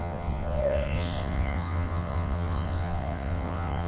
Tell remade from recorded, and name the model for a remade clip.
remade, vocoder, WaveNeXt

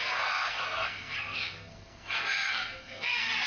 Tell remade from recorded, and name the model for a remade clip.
remade, codec, SNAC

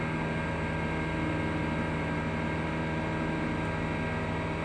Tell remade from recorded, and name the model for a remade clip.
recorded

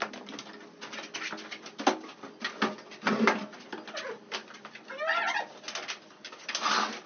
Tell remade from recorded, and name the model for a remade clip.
recorded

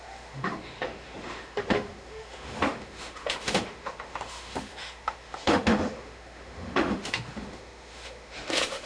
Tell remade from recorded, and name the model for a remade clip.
remade, autoencoder, DAC-VAE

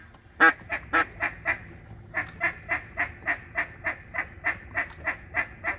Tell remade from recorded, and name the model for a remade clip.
recorded